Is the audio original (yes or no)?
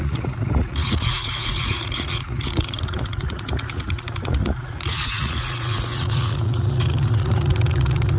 no